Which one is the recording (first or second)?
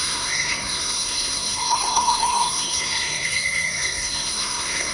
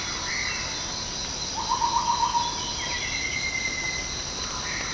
second